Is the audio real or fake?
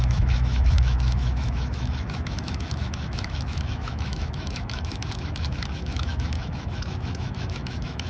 fake